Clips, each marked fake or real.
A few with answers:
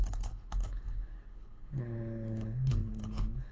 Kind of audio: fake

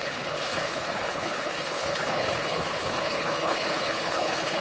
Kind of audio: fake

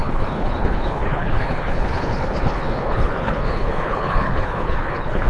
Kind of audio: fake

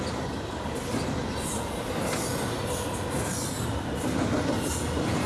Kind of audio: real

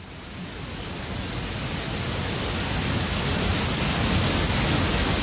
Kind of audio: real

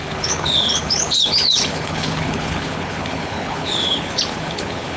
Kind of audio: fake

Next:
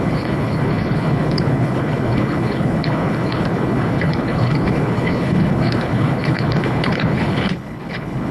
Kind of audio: fake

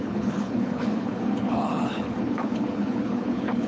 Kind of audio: fake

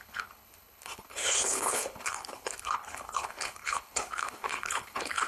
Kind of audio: fake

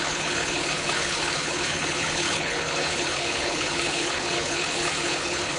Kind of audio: fake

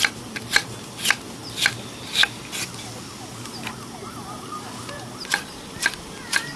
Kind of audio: real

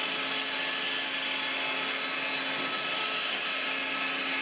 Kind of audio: real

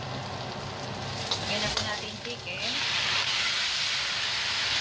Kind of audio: real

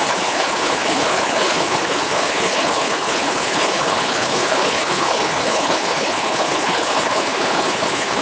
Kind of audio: fake